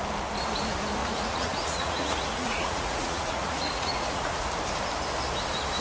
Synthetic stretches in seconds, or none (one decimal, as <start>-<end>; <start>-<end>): 1.0-4.5